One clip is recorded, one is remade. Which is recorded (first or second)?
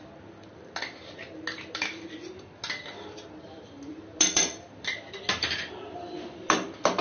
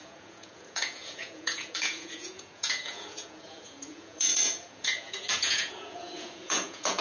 first